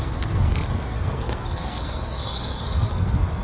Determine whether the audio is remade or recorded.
remade